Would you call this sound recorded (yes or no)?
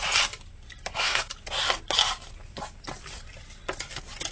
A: yes